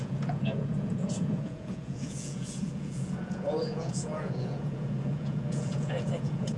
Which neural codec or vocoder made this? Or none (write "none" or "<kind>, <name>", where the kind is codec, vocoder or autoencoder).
vocoder, Vocos